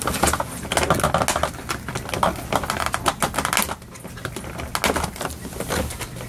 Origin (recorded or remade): recorded